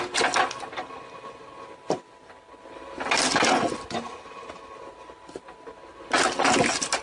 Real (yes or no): yes